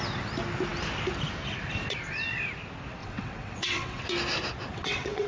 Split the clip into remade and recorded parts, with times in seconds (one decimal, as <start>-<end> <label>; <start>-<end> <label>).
0.0-3.0 recorded; 3.0-4.0 remade; 4.0-4.7 recorded; 4.7-5.3 remade